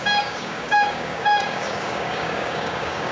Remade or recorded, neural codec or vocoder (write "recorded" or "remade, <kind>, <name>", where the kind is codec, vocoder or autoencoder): remade, codec, DAC